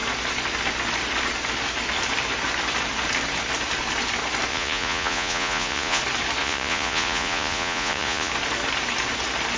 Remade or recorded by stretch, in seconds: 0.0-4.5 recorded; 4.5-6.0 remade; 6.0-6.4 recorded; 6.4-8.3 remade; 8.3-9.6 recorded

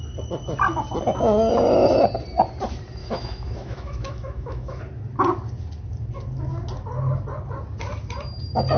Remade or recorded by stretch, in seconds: 0.0-3.0 recorded; 3.0-4.8 remade; 4.8-8.8 recorded

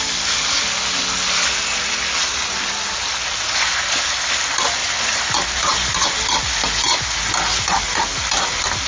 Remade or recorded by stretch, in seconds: 0.0-8.9 recorded